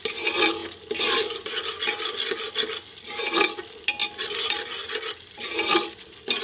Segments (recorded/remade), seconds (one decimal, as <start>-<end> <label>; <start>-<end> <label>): 0.0-0.6 recorded; 0.6-1.5 remade; 1.5-6.4 recorded